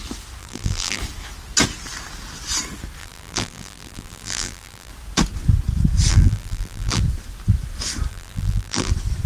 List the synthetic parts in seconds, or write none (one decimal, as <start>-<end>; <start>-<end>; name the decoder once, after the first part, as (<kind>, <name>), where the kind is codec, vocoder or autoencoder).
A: 0.4-1.0 (vocoder, BigVGAN v2); 3.0-4.9; 6.1-7.0; 8.1-8.9